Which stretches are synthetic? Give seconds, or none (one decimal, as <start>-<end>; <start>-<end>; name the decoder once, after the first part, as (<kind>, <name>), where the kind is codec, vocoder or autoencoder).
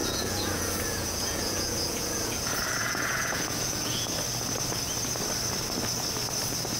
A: 0.0-4.1 (vocoder, Vocos)